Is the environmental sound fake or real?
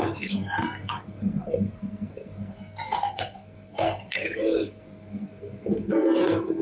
fake